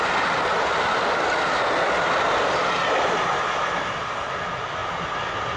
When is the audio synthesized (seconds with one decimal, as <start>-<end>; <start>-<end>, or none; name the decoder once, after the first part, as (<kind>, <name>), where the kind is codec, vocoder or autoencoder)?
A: none